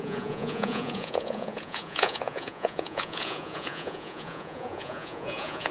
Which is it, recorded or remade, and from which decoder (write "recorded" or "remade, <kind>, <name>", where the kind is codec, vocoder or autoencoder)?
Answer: remade, vocoder, Vocos